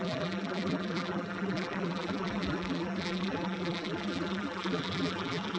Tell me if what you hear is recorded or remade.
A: remade